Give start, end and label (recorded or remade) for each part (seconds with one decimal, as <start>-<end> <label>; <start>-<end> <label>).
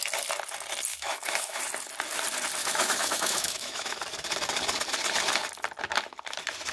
0.0-0.9 recorded; 0.9-1.6 remade; 1.6-2.6 recorded; 2.6-4.0 remade; 4.0-6.7 recorded